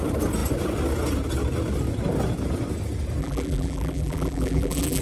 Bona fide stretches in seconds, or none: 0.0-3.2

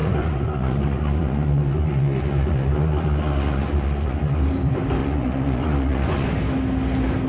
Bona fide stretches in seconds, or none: 4.4-5.0; 6.3-7.3